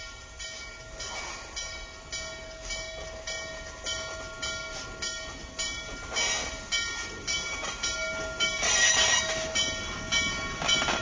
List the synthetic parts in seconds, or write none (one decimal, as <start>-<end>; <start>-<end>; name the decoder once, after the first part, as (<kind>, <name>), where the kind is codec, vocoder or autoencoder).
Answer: none